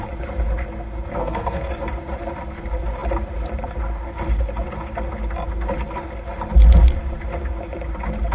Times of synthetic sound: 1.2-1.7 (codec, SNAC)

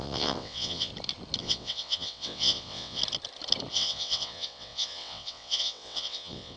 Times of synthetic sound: 0.0-0.9 (vocoder, WaveNeXt); 1.4-3.0; 3.7-6.6

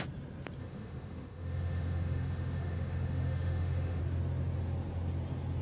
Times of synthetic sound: 0.6-4.0 (autoencoder, DAC-VAE)

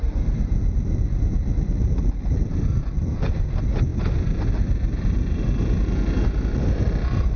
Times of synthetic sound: none